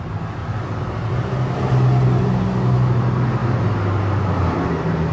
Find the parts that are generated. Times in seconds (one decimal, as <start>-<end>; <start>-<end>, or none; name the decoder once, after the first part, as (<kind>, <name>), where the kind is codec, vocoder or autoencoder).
0.4-1.1 (vocoder, BigVGAN v2)